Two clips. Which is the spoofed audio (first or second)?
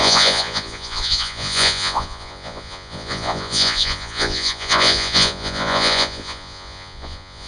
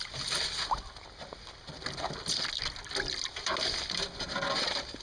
first